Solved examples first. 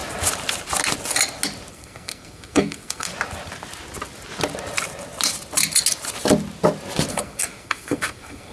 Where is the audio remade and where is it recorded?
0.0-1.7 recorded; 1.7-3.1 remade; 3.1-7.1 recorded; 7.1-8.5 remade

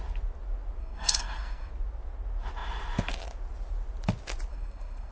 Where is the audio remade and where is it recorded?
0.0-0.8 recorded; 0.8-1.7 remade; 1.7-4.5 recorded; 4.5-5.1 remade